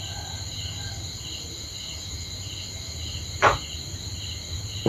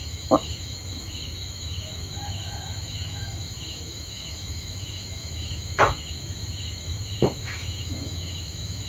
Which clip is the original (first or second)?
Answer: first